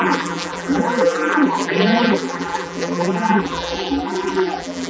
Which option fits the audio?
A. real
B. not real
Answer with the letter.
B